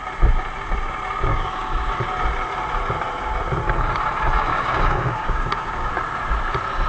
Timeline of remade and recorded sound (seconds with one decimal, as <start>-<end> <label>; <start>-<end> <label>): 0.0-1.3 recorded; 1.3-1.9 remade; 1.9-4.5 recorded; 4.5-5.9 remade; 5.9-6.9 recorded